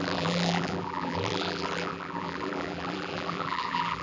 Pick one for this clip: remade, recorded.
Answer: remade